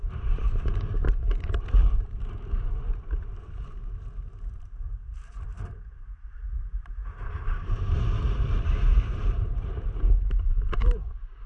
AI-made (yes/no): yes